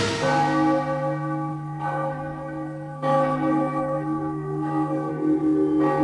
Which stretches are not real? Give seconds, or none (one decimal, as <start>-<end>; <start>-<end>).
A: 1.5-5.1